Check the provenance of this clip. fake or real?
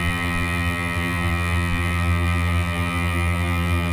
fake